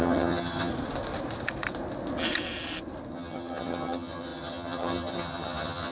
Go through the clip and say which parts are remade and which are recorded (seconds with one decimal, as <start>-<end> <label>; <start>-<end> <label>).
0.0-0.7 remade; 0.7-3.1 recorded; 3.1-5.9 remade

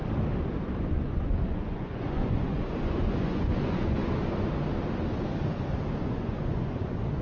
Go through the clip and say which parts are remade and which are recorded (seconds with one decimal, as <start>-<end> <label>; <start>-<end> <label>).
0.0-0.9 recorded; 0.9-4.0 remade; 4.0-6.0 recorded; 6.0-7.2 remade

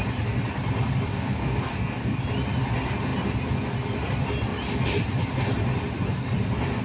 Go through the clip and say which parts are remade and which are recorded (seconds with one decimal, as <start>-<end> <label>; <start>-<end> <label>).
0.0-1.1 recorded; 1.1-2.2 remade; 2.2-6.8 recorded